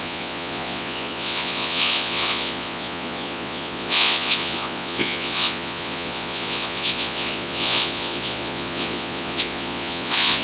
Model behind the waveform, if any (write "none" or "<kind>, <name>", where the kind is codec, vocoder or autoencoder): vocoder, Vocos